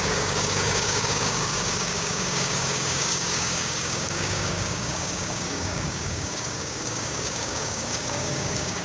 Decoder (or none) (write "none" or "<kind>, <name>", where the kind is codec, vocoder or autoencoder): codec, DAC